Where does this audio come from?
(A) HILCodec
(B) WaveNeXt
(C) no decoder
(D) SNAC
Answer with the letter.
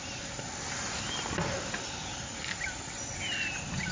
C